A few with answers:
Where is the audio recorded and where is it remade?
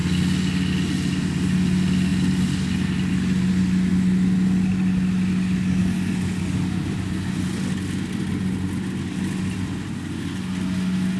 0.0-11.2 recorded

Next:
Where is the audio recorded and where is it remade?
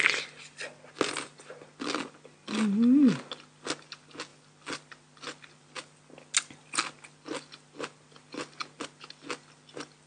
0.0-10.1 recorded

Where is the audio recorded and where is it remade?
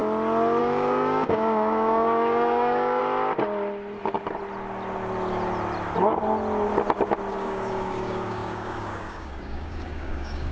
0.0-0.6 recorded; 0.6-3.0 remade; 3.0-7.3 recorded; 7.3-10.5 remade